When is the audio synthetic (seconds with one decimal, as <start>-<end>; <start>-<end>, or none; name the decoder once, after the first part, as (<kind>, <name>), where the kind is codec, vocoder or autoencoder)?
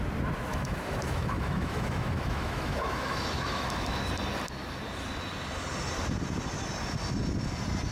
0.5-4.1 (autoencoder, DAC-VAE)